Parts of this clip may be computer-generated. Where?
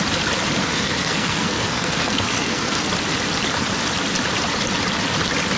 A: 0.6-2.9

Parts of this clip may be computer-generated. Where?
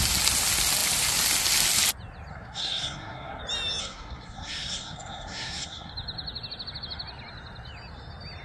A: 2.3-3.4; 3.8-5.9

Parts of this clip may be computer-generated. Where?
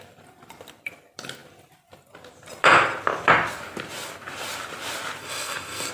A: 5.2-5.9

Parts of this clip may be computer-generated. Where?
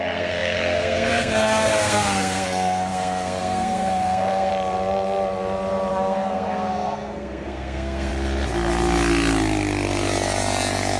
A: 0.0-4.5; 5.9-8.1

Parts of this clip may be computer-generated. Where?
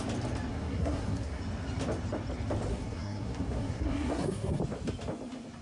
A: 0.5-1.4; 2.7-4.6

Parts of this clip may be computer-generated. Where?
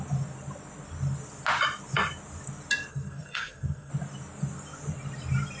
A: 2.9-3.9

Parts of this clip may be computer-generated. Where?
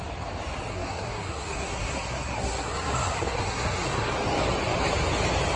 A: 0.7-4.1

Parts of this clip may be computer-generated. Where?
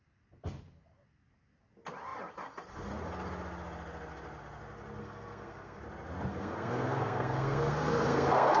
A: 5.0-5.8; 6.3-8.6